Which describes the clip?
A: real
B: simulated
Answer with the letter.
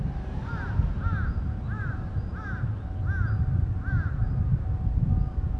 A